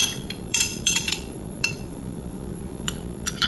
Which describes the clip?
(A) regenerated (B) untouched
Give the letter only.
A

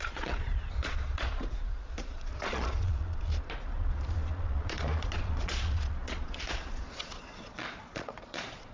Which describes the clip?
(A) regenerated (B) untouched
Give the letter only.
A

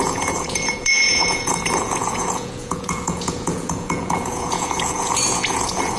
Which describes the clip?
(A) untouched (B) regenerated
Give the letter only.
B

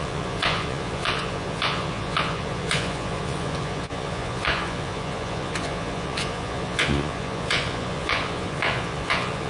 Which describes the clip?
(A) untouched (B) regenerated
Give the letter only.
B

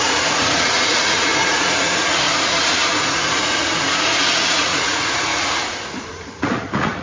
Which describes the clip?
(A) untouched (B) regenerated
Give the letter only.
B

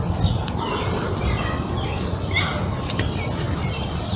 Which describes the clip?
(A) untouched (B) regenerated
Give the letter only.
A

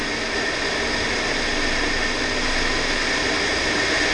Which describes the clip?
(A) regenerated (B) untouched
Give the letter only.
B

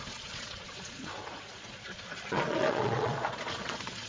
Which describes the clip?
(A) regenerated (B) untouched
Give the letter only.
A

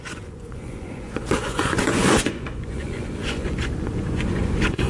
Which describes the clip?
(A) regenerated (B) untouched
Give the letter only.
A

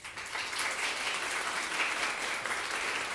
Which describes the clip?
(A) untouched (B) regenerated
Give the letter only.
A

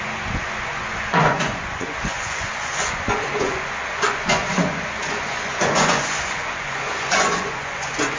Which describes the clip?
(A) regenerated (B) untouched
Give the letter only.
A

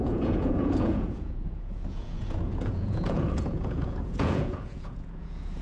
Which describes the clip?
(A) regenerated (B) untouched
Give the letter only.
A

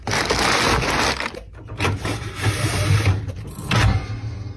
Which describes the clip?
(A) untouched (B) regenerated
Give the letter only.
A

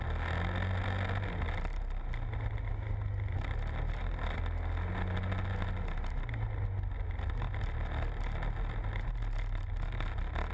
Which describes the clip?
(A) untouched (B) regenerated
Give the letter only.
A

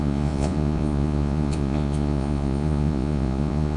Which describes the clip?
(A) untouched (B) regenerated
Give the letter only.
B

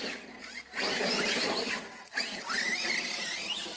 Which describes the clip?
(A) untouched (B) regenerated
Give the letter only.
A